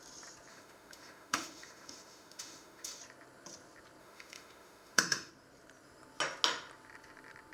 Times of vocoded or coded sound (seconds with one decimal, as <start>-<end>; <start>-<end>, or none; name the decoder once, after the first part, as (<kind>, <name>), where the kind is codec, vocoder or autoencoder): 0.5-3.0 (autoencoder, DAC-VAE); 4.0-5.3